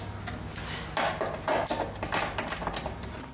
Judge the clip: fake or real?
real